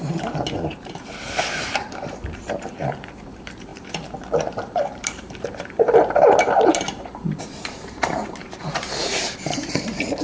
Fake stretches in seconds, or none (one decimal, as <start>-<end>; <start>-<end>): 0.0-10.2